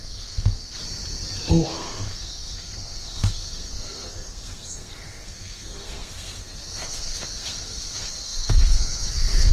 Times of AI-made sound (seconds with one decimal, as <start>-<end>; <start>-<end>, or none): 0.0-0.8; 1.5-9.5